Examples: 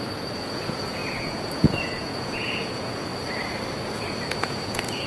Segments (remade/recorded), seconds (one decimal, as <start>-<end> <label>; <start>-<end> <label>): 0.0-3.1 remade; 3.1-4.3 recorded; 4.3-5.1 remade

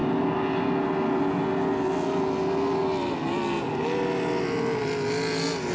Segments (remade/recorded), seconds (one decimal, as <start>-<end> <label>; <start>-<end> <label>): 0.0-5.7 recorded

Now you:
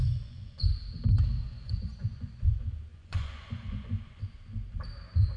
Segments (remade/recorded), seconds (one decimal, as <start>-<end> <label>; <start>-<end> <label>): 0.0-0.7 remade; 0.7-1.4 recorded; 1.4-2.5 remade; 2.5-2.9 recorded; 2.9-4.2 remade; 4.2-5.4 recorded